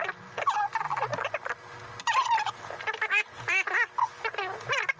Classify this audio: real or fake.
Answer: real